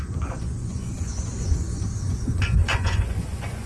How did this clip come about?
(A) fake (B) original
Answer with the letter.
A